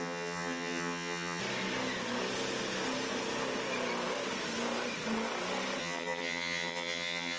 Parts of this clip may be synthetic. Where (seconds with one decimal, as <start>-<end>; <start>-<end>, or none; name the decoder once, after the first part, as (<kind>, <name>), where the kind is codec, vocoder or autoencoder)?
0.0-1.4 (vocoder, HiFi-GAN); 5.8-7.4